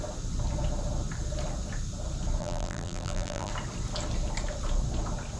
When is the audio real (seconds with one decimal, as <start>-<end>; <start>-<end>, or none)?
0.0-2.4; 3.5-5.4